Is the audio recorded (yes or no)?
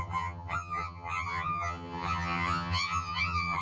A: no